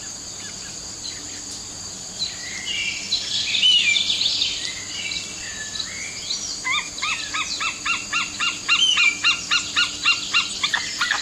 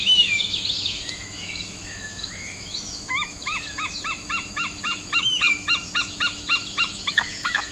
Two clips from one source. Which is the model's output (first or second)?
second